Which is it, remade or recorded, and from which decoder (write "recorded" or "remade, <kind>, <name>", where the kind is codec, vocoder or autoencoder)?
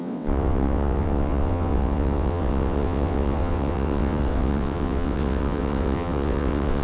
remade, vocoder, WaveNeXt